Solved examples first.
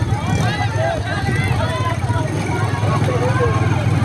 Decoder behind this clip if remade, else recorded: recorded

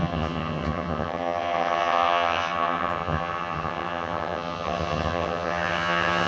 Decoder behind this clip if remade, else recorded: remade, vocoder, HiFi-GAN